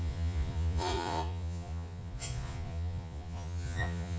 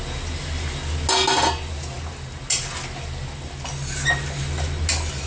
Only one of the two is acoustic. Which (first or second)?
second